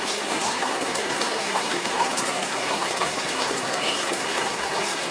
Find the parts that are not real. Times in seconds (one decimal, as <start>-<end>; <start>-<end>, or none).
0.0-5.1